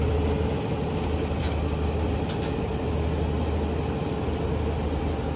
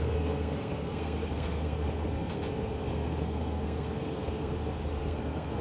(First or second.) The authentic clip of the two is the first